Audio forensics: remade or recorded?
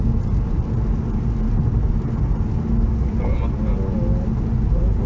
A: recorded